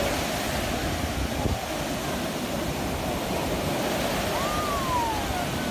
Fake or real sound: real